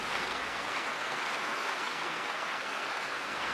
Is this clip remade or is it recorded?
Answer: remade